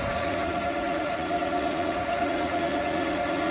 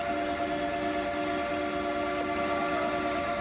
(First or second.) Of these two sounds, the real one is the second